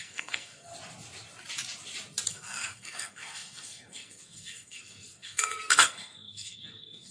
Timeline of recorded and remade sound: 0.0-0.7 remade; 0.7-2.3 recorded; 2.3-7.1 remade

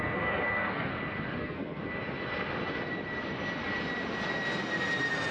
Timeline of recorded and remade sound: 0.0-0.9 remade; 0.9-1.4 recorded; 1.4-1.8 remade; 1.8-5.3 recorded